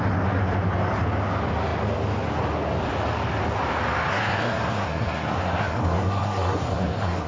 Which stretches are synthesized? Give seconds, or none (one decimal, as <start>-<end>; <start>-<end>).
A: 4.1-7.3

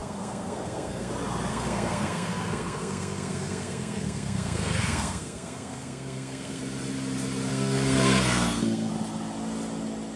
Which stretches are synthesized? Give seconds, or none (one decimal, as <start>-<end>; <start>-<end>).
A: 0.0-1.1; 1.5-6.6; 7.5-8.9

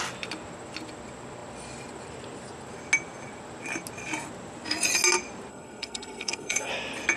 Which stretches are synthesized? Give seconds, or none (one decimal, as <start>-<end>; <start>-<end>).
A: 5.5-6.7

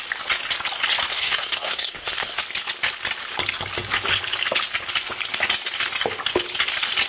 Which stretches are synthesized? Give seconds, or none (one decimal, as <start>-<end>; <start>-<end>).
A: 1.1-2.4